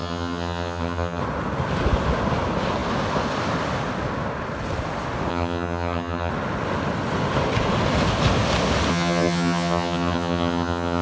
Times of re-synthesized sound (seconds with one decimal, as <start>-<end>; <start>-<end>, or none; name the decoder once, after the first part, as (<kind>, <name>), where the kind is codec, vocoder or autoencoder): 0.0-1.2 (vocoder, HiFi-GAN); 5.3-6.3; 8.9-11.0